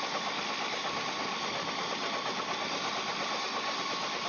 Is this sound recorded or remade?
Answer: recorded